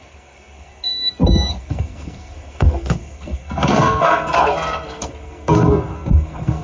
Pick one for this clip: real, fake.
fake